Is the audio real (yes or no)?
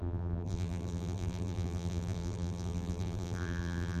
no